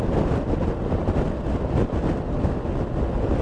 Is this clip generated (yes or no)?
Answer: no